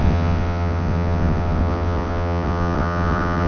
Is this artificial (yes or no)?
yes